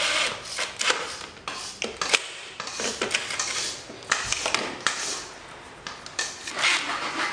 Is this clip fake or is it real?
real